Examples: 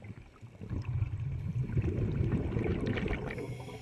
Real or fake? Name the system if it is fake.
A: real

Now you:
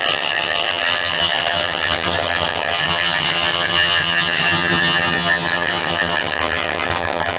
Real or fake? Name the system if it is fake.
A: fake, vocoder, HiFi-GAN